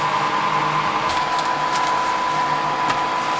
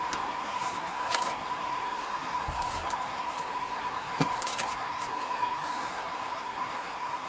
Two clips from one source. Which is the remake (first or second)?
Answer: second